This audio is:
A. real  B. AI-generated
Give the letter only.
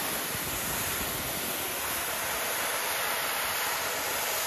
A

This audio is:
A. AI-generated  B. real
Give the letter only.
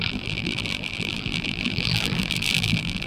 A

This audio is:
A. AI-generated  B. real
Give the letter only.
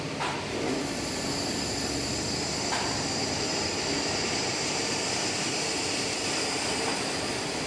A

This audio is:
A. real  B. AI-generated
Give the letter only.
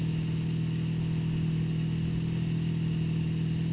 A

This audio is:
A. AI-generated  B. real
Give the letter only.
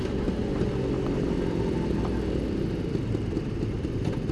B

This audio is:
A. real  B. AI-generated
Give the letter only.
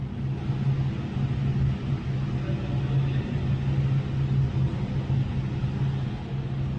A